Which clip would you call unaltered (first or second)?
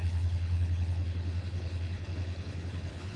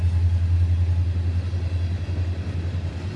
second